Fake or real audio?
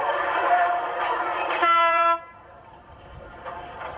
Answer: fake